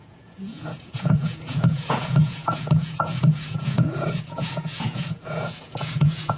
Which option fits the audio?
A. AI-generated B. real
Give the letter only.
A